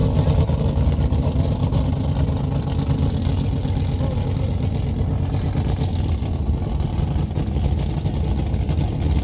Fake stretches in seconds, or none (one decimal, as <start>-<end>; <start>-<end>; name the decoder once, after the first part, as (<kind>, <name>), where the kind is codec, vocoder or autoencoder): none